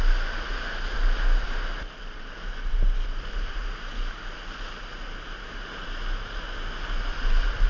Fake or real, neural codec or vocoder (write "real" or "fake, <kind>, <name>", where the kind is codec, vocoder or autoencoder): real